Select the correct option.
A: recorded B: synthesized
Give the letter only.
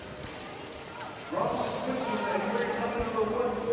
A